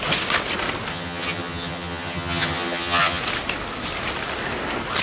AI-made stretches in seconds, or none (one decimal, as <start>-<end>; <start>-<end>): 0.9-3.2